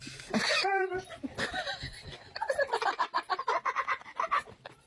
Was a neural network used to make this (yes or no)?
yes